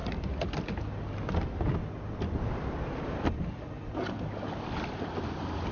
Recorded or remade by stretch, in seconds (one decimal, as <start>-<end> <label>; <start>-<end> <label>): 0.0-5.7 recorded